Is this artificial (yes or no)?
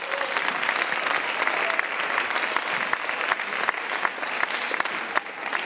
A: no